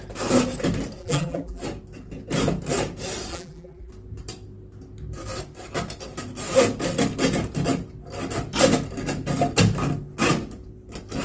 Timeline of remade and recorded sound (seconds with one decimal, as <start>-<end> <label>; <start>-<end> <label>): 0.0-1.0 recorded; 1.0-1.6 remade; 1.6-3.3 recorded; 3.3-3.9 remade; 3.9-11.2 recorded